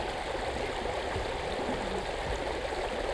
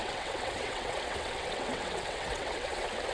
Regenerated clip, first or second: second